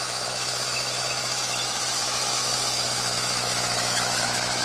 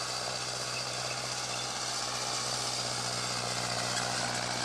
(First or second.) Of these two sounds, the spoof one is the first